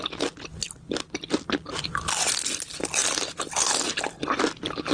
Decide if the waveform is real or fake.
real